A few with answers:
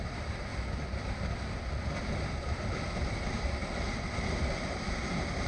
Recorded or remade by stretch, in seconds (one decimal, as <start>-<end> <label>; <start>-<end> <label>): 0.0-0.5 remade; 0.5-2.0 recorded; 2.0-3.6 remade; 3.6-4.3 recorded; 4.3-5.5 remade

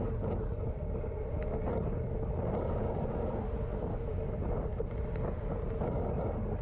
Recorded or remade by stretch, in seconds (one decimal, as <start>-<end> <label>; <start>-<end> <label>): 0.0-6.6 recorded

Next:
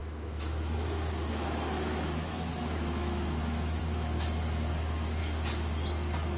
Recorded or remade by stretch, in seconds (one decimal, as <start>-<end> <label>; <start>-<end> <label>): 0.0-5.2 remade; 5.2-6.4 recorded

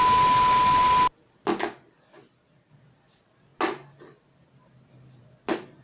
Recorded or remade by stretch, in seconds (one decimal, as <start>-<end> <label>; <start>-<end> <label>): 0.0-5.8 recorded

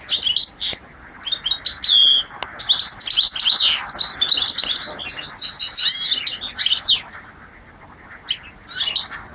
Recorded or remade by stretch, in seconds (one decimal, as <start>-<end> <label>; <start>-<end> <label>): 0.0-9.3 recorded